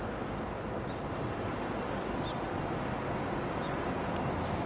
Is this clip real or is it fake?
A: real